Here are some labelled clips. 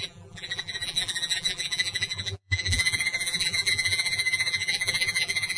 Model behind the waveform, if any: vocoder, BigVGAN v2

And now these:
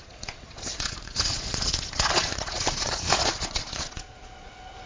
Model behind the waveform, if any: vocoder, Vocos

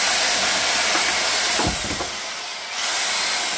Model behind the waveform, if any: none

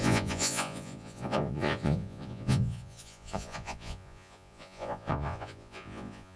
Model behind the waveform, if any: vocoder, Vocos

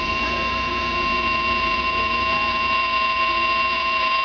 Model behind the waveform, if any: vocoder, Vocos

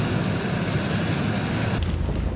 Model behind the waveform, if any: none